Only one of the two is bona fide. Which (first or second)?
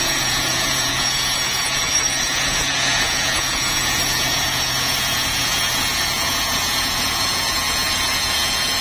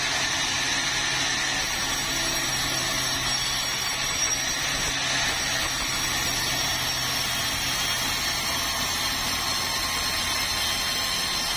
second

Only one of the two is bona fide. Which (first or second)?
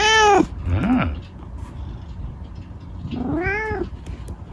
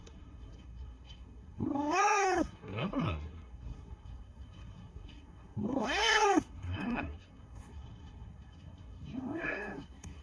first